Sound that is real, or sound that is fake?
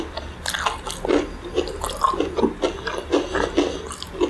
real